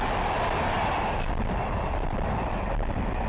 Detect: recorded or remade recorded